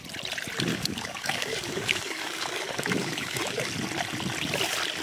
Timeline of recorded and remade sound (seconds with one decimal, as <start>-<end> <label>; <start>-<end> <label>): 0.0-0.7 recorded; 0.7-3.7 remade; 3.7-5.0 recorded